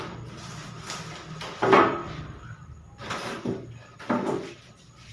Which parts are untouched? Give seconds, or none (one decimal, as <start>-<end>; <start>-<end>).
0.0-2.0